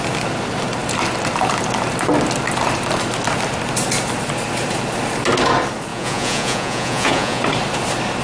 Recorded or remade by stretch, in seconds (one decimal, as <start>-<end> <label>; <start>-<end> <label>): 0.0-5.9 recorded; 5.9-7.4 remade; 7.4-8.2 recorded